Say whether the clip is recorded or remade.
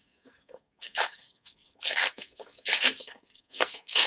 remade